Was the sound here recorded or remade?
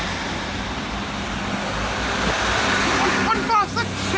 recorded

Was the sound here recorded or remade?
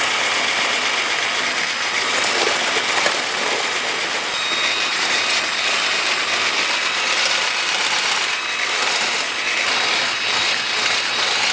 recorded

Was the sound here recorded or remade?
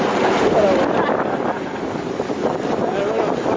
recorded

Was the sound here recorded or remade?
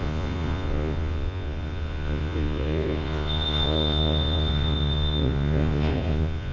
remade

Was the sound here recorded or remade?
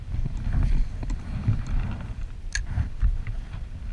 recorded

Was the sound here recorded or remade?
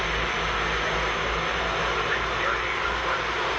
recorded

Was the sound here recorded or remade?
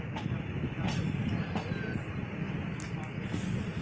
recorded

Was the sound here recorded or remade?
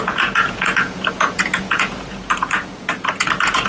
remade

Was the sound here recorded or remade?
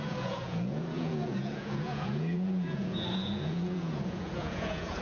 remade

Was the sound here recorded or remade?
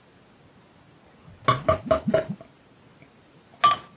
recorded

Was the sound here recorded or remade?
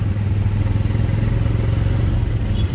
recorded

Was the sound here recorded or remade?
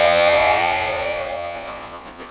remade